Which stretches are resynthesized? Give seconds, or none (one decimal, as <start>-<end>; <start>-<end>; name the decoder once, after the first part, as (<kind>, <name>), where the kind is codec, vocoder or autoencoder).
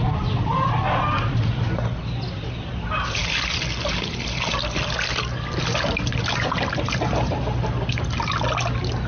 none